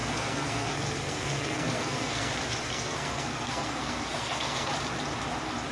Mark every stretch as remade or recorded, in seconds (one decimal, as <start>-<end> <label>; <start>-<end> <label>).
0.0-2.3 remade; 2.3-2.7 recorded; 2.7-4.7 remade; 4.7-5.7 recorded